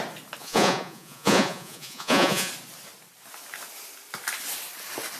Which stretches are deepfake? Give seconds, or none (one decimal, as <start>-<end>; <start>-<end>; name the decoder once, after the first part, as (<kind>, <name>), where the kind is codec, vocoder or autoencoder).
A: 0.4-2.5 (vocoder, Vocos)